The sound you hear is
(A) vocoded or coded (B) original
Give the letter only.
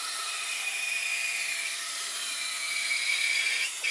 A